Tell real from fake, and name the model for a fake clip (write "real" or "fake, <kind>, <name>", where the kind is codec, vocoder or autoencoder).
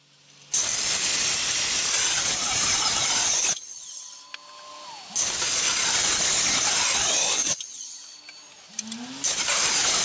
real